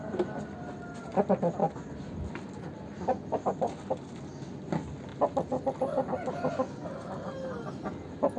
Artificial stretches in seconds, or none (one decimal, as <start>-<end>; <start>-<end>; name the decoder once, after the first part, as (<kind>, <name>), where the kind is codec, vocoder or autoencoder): none